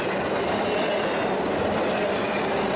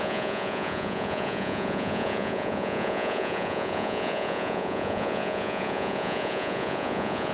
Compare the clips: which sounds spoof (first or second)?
second